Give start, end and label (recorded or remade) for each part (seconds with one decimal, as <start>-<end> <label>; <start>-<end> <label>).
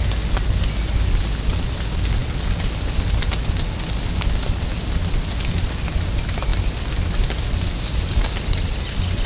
0.0-9.3 recorded